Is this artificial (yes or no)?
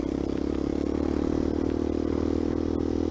no